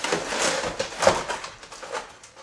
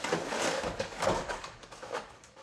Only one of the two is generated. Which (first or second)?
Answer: second